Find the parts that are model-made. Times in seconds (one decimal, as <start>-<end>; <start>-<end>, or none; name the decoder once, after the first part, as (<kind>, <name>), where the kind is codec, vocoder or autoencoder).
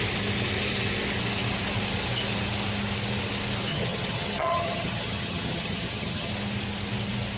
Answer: 3.7-6.3 (vocoder, HiFi-GAN)